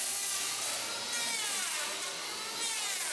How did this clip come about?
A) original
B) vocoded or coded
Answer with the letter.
A